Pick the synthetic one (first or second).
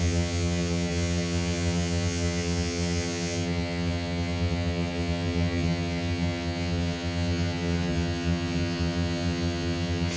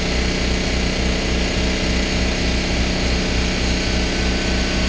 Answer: first